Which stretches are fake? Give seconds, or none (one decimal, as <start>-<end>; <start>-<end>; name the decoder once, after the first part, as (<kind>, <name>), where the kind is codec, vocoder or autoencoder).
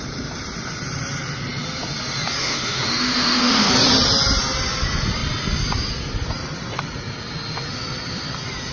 2.4-3.7 (autoencoder, DAC-VAE)